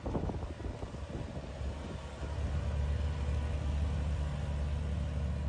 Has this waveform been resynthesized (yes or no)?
no